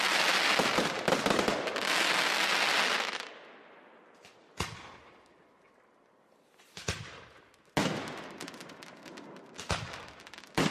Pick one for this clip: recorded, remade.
recorded